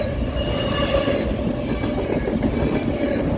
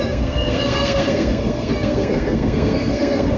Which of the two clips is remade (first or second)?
second